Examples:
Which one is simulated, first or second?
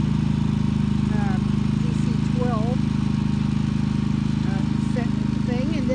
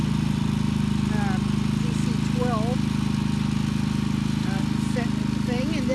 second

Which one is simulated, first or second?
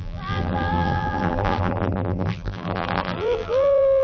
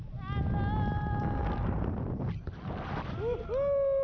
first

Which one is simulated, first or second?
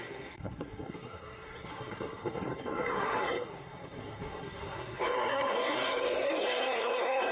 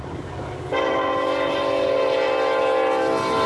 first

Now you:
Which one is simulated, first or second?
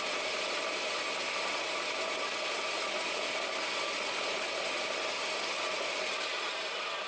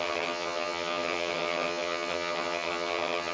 second